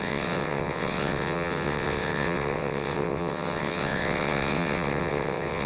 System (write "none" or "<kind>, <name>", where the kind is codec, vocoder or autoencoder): vocoder, WaveNeXt